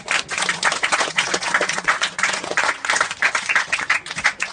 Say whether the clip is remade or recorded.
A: remade